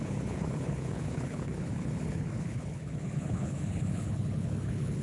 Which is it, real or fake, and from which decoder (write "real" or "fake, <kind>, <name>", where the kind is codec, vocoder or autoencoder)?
fake, codec, HILCodec